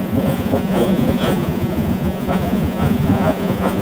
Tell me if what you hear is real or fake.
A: fake